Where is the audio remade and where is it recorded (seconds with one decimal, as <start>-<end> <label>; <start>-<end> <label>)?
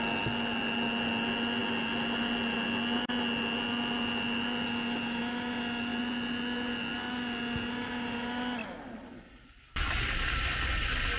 0.0-11.2 recorded